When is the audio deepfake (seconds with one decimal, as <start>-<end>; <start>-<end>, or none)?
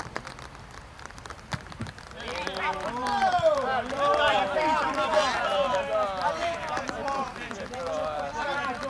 3.0-4.4; 6.4-7.4